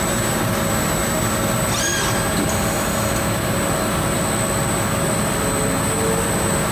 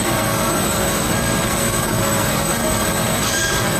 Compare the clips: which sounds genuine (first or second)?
first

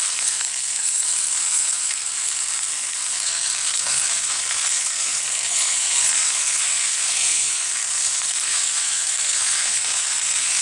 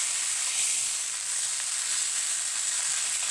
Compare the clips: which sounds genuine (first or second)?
second